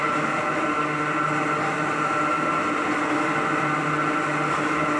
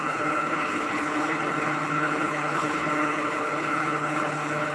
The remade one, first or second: second